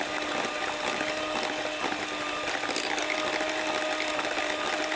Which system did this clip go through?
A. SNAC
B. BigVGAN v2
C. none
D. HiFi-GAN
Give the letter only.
C